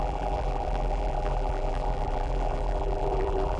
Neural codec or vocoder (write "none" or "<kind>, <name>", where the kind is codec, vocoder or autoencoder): vocoder, BigVGAN v2